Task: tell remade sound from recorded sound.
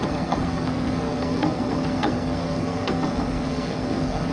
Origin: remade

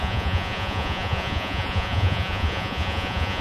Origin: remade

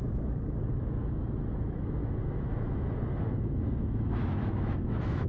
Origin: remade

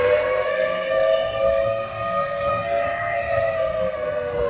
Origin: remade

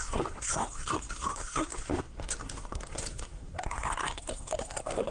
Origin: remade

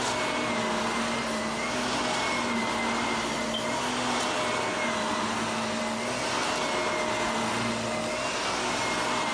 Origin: recorded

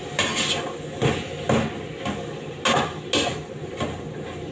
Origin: recorded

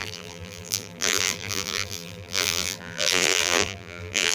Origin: remade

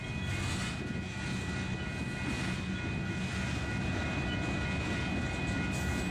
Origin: recorded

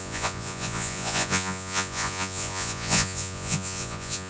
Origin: remade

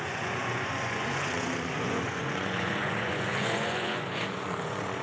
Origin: remade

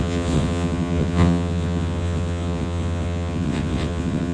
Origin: remade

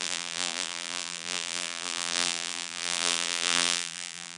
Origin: remade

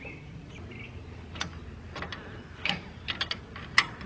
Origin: recorded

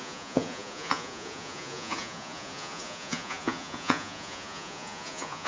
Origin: remade